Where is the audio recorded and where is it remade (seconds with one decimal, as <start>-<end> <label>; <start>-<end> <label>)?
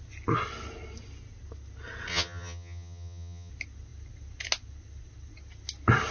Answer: 0.0-2.1 recorded; 2.1-3.5 remade; 3.5-6.1 recorded